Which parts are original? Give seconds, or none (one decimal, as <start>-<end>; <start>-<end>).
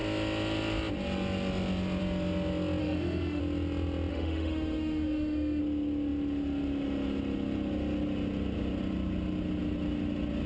0.0-2.8; 3.4-4.1; 5.6-10.5